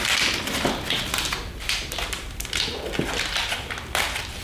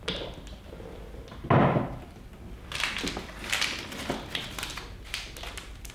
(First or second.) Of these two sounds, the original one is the second